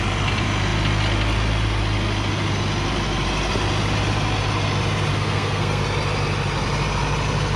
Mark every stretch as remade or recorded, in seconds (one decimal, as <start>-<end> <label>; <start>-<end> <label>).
0.0-5.1 recorded; 5.1-5.8 remade; 5.8-7.6 recorded